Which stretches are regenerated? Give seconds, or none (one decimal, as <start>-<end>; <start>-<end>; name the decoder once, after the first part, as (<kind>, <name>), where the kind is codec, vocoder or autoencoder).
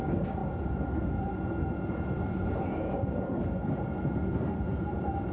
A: none